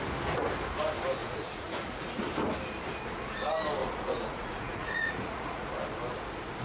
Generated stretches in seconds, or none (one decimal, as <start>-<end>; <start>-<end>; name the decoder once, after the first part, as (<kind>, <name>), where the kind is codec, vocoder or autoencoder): 1.2-2.3 (vocoder, Vocos); 3.8-5.7

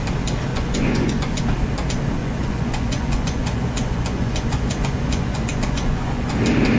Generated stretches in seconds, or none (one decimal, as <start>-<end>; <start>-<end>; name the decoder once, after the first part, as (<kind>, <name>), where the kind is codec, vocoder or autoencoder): 0.5-1.4 (vocoder, Vocos); 2.2-6.3

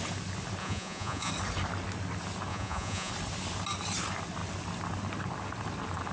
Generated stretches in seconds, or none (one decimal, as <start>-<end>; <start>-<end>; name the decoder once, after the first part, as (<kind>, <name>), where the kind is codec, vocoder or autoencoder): 0.6-1.3 (vocoder, Vocos); 2.5-3.1

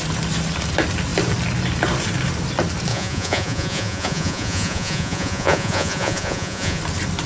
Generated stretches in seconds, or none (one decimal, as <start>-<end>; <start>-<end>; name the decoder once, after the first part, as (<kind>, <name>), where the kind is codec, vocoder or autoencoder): 2.9-6.8 (vocoder, Vocos)

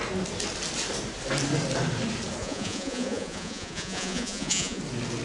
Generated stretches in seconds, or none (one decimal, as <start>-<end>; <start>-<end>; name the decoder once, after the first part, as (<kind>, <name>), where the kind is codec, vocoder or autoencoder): 2.4-4.8 (vocoder, Vocos)

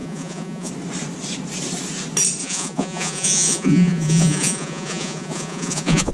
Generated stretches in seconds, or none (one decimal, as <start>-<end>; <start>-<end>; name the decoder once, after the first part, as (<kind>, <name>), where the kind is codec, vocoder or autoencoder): 0.0-0.7 (vocoder, Vocos); 2.4-6.1

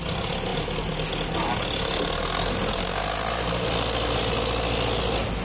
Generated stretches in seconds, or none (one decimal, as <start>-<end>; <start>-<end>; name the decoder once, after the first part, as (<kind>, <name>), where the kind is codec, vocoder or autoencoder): none